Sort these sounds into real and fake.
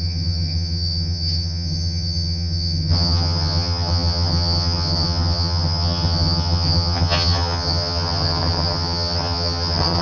fake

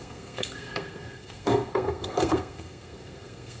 fake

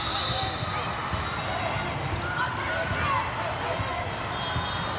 real